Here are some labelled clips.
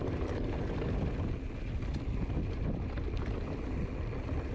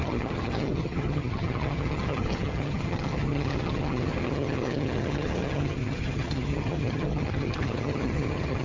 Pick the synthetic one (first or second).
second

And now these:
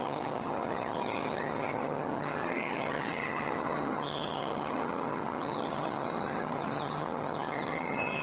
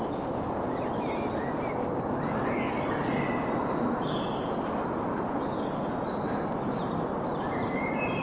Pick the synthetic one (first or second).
first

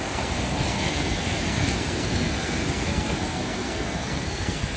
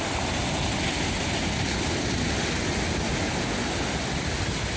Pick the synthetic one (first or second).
first